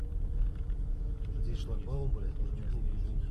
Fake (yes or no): no